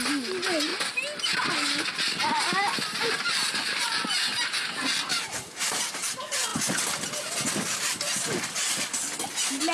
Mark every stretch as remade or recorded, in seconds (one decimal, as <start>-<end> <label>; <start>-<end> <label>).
0.0-5.1 recorded; 5.1-6.0 remade; 6.0-9.7 recorded